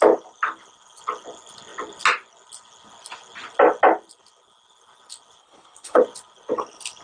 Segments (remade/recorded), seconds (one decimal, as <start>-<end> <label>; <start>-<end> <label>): 0.0-5.4 recorded; 5.4-6.0 remade; 6.0-7.0 recorded